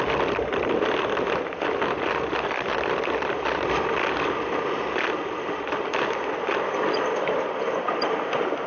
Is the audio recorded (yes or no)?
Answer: yes